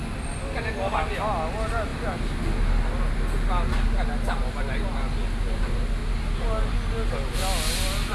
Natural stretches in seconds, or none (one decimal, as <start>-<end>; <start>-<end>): 0.0-8.1